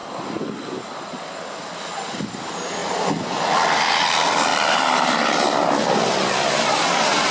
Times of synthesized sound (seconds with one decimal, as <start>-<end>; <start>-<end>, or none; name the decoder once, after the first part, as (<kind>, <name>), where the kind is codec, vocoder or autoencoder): none